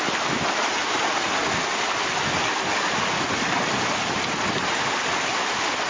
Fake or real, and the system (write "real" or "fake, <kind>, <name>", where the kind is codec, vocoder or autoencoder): real